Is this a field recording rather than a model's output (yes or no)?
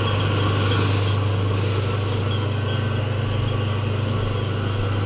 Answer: yes